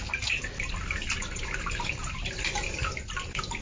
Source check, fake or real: real